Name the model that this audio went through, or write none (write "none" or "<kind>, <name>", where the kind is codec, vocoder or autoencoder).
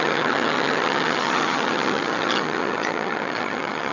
vocoder, HiFi-GAN